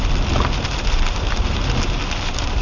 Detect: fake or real real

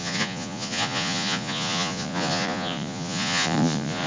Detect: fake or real fake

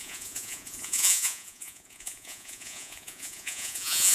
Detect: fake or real fake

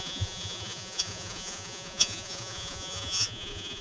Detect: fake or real fake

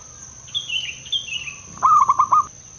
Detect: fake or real real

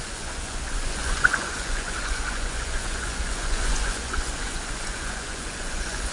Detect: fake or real fake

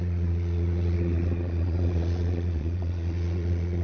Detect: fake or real fake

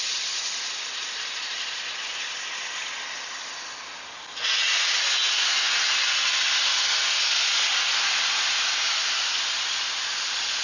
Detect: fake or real real